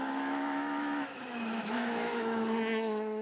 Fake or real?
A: fake